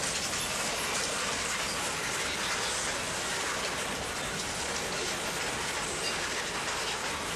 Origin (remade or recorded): recorded